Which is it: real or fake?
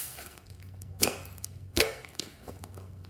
fake